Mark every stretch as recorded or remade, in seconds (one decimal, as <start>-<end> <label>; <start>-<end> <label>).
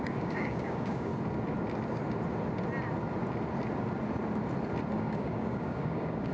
0.0-1.1 remade; 1.1-4.9 recorded; 4.9-6.3 remade